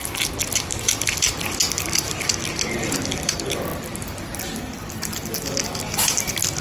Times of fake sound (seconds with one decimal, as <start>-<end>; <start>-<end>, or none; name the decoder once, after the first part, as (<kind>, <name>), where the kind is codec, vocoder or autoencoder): none

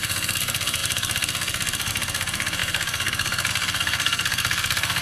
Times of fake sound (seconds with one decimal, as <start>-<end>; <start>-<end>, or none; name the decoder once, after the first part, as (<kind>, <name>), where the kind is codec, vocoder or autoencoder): 0.0-5.0 (codec, SNAC)

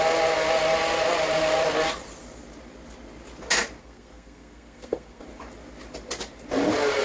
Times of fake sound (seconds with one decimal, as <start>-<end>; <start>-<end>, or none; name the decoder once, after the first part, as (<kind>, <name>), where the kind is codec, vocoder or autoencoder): 3.8-5.2 (codec, SNAC)

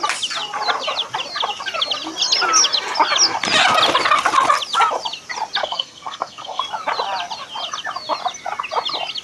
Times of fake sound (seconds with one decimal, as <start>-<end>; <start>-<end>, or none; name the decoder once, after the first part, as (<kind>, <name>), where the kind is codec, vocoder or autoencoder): 5.6-6.6 (codec, SNAC)

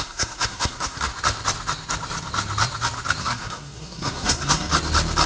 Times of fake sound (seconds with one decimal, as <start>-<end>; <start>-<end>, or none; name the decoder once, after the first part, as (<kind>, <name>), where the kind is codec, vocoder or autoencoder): 0.0-1.1 (codec, SNAC); 3.2-4.7

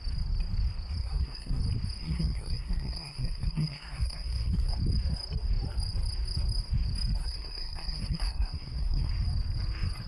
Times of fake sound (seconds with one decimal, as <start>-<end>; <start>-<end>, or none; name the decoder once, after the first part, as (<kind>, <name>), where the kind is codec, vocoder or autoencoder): 1.0-1.6 (codec, SNAC); 2.0-4.7; 7.2-9.1